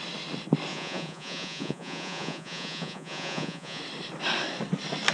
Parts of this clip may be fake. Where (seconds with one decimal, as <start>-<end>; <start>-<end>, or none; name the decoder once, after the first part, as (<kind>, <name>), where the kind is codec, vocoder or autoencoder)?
0.7-3.8 (vocoder, Vocos)